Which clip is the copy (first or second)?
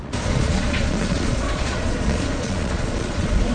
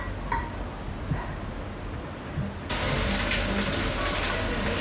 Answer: first